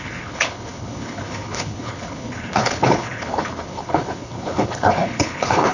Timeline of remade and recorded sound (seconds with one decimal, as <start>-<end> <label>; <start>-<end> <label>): 0.0-5.7 remade